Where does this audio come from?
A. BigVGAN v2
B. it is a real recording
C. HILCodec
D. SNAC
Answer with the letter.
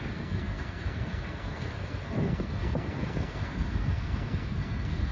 D